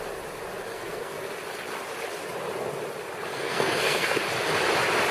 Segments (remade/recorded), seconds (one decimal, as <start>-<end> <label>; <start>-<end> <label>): 0.0-0.7 recorded; 0.7-1.3 remade; 1.3-3.3 recorded; 3.3-4.2 remade; 4.2-5.1 recorded